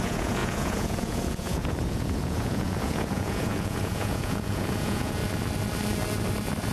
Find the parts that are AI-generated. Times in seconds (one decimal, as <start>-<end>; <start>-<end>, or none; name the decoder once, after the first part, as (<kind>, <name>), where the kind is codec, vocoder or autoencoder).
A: 0.0-5.2 (vocoder, Vocos)

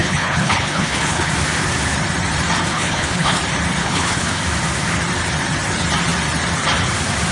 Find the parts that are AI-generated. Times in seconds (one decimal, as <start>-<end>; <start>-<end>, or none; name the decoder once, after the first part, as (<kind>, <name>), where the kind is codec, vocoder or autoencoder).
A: 0.0-1.3 (codec, HILCodec); 2.7-3.4; 3.8-4.4

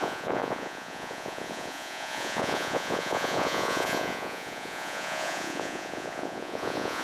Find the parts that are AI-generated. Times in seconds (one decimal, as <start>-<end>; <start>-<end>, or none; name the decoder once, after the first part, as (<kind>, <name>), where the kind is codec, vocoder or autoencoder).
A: 0.0-7.0 (vocoder, Vocos)

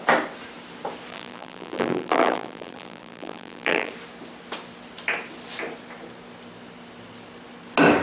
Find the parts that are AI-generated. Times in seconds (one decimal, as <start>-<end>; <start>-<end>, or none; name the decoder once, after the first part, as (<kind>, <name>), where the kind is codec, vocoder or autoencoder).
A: 1.1-3.9 (vocoder, BigVGAN v2)